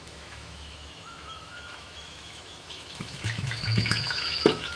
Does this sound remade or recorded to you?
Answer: remade